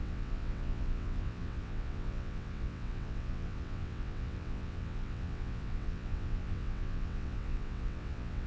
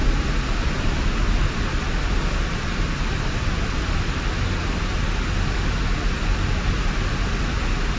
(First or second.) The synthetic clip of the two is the first